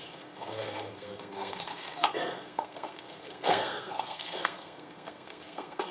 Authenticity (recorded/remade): remade